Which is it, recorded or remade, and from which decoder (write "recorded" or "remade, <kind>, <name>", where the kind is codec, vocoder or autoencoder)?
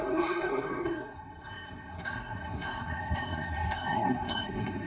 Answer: remade, codec, SNAC